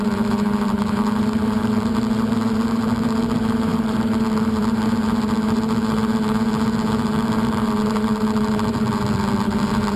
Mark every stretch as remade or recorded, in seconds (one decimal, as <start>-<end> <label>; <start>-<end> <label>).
0.0-10.0 remade